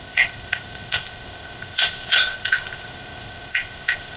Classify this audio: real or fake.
fake